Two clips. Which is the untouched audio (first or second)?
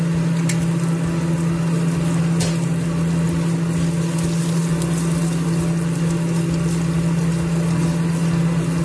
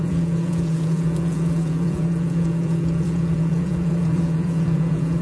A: first